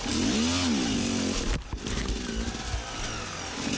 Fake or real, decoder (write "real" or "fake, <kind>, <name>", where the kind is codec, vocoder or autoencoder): real